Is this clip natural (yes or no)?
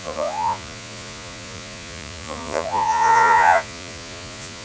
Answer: no